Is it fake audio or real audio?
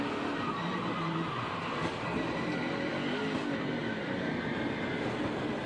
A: real